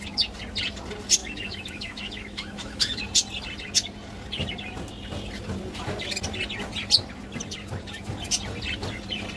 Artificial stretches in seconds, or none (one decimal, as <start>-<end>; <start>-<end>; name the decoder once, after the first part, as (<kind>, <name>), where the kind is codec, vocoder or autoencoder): 1.2-3.0 (autoencoder, DAC-VAE)